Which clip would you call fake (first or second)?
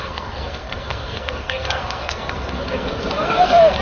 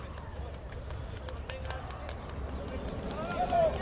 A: first